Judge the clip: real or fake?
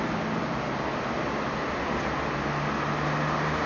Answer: real